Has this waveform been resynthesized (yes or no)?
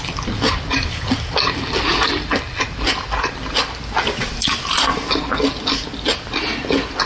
no